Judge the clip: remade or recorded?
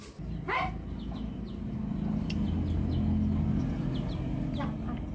recorded